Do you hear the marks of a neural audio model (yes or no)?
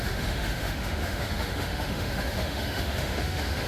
yes